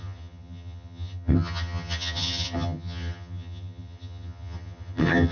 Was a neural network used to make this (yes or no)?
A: yes